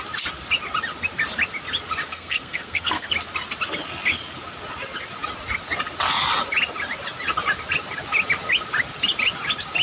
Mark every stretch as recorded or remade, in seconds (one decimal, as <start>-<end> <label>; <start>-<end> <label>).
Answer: 0.0-2.1 recorded; 2.1-3.1 remade; 3.1-9.8 recorded